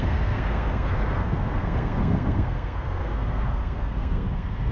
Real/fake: fake